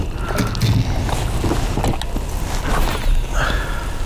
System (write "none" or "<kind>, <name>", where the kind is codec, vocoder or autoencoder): none